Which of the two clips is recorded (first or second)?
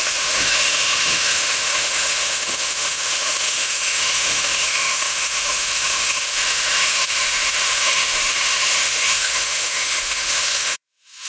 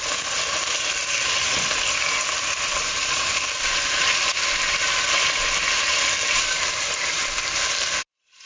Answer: second